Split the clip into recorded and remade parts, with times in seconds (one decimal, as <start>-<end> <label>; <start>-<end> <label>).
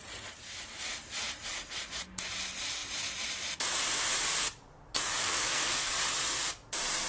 0.0-5.2 recorded; 5.2-5.9 remade; 5.9-7.1 recorded